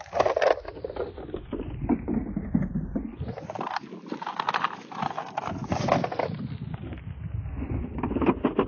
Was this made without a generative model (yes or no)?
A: yes